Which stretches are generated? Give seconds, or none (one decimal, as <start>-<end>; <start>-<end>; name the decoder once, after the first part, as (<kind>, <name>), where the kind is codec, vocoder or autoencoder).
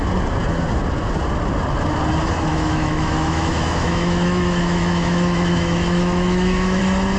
2.5-6.8 (autoencoder, DAC-VAE)